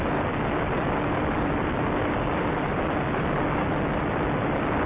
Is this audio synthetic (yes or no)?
yes